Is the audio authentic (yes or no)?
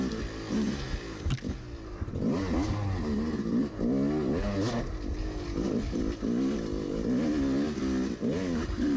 yes